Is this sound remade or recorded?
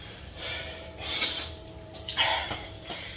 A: remade